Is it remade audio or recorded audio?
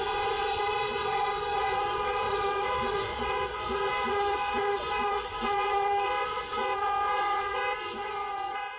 remade